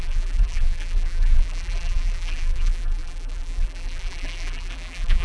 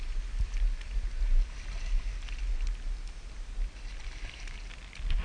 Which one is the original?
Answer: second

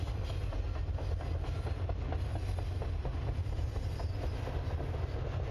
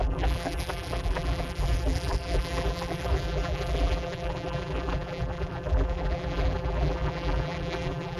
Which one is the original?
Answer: first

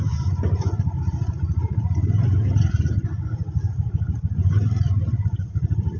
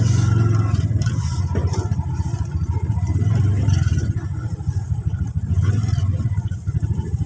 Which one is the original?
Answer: second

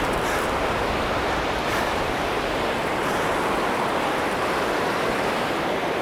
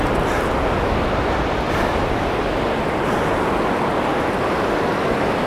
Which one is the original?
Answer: second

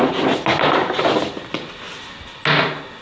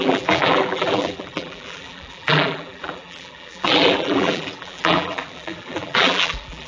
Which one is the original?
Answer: first